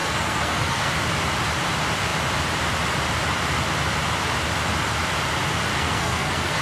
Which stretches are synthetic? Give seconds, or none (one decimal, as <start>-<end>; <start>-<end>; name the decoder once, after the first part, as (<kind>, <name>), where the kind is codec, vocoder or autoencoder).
0.0-0.9 (codec, SNAC); 5.7-6.6